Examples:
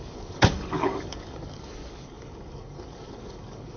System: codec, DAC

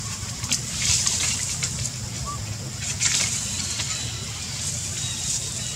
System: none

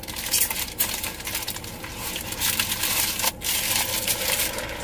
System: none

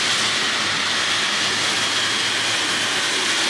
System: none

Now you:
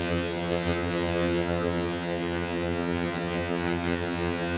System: vocoder, HiFi-GAN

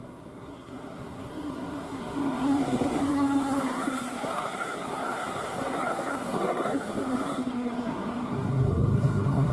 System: codec, SNAC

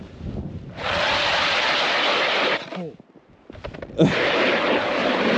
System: none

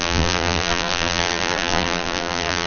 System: vocoder, BigVGAN v2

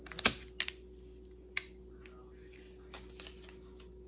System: none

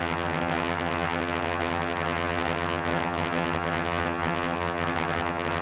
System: vocoder, HiFi-GAN